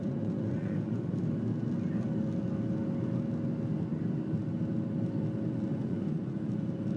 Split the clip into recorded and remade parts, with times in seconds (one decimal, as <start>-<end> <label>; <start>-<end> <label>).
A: 0.0-1.1 remade; 1.1-5.7 recorded; 5.7-6.5 remade; 6.5-7.0 recorded